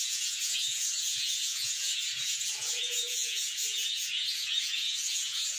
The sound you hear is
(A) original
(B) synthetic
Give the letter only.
B